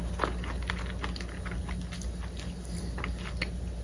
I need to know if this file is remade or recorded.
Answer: recorded